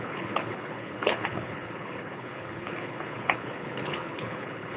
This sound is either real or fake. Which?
fake